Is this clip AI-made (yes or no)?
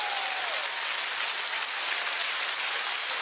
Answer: no